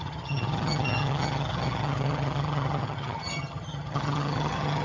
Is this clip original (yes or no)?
no